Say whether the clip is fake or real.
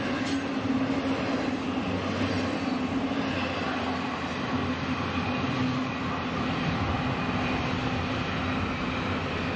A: real